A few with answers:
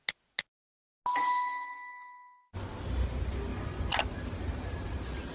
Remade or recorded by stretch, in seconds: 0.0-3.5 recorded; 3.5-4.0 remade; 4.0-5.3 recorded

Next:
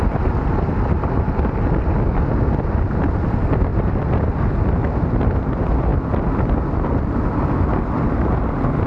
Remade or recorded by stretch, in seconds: 0.0-8.9 recorded

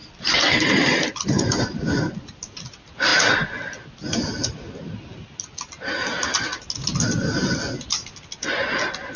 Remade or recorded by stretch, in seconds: 0.0-2.4 remade; 2.4-9.2 recorded

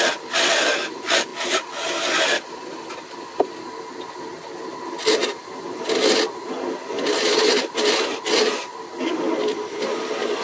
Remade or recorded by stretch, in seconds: 0.0-10.4 recorded

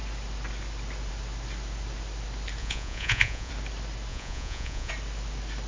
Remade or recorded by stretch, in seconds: 0.0-2.6 recorded; 2.6-3.5 remade; 3.5-4.1 recorded; 4.1-4.9 remade; 4.9-5.7 recorded